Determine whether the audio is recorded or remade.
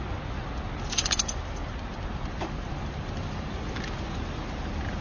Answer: recorded